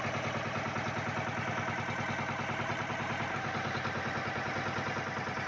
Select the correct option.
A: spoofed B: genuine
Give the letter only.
B